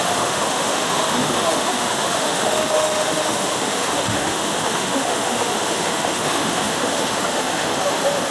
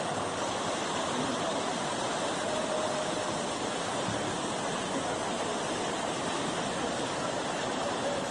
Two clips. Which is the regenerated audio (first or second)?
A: first